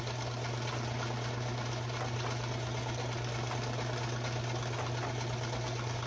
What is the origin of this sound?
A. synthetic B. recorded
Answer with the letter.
B